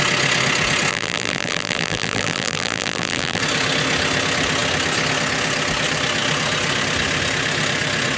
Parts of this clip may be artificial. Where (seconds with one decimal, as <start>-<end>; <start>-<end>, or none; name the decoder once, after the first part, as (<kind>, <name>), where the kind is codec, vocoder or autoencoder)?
0.9-3.4 (vocoder, BigVGAN v2)